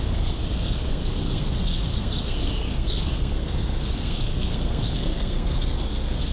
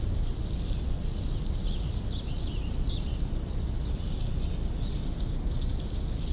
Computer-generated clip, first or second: first